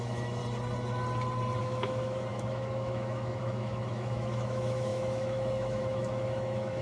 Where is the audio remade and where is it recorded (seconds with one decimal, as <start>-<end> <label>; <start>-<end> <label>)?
0.0-0.4 remade; 0.4-1.6 recorded; 1.6-6.8 remade